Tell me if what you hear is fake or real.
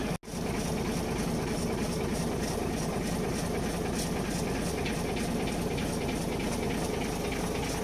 real